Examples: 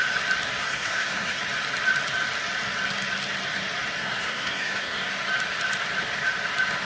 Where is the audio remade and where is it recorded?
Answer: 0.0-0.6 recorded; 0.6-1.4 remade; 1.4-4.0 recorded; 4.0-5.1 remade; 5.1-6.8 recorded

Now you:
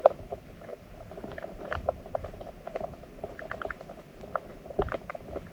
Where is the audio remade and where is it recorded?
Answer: 0.0-0.7 recorded; 0.7-4.0 remade; 4.0-4.5 recorded; 4.5-5.1 remade; 5.1-5.5 recorded

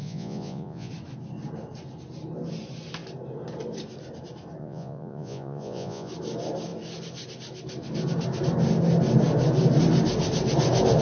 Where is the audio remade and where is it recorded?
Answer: 0.0-0.9 remade; 0.9-4.6 recorded; 4.6-6.1 remade; 6.1-11.0 recorded

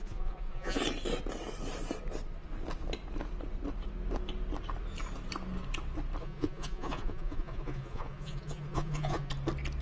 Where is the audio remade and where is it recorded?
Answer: 0.0-0.8 remade; 0.8-6.2 recorded; 6.2-9.3 remade; 9.3-9.8 recorded

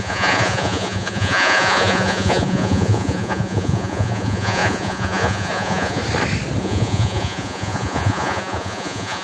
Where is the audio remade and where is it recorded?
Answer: 0.0-6.0 remade; 6.0-6.6 recorded; 6.6-9.2 remade

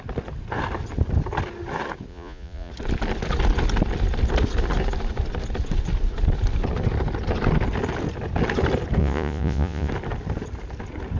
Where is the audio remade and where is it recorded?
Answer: 0.0-2.1 recorded; 2.1-2.7 remade; 2.7-9.0 recorded; 9.0-9.9 remade; 9.9-11.2 recorded